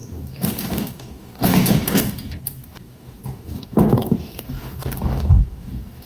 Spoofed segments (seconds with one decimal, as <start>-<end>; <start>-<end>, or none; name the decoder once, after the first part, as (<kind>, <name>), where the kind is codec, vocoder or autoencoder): 0.0-6.1 (codec, DAC)